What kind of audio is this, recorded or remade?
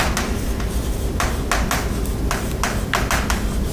recorded